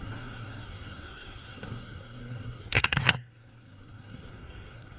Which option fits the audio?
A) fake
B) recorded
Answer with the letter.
A